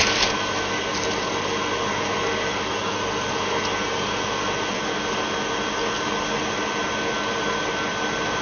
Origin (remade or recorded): recorded